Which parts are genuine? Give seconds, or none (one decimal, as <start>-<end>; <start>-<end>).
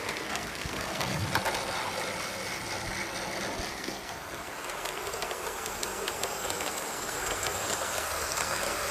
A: 1.2-3.7